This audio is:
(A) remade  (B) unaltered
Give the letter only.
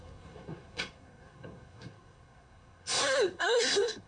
A